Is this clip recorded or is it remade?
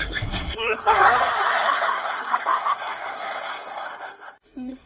remade